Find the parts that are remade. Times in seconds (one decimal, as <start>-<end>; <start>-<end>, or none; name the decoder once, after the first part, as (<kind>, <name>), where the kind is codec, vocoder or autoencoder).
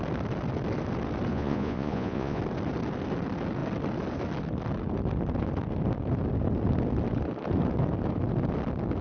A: 1.3-2.4 (vocoder, Vocos)